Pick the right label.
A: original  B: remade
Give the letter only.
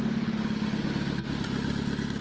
A